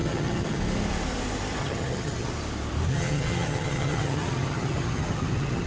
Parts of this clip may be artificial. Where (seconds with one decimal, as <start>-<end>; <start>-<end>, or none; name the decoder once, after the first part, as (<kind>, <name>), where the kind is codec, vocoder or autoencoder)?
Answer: 0.0-0.6 (vocoder, HiFi-GAN); 1.6-2.3; 2.9-5.7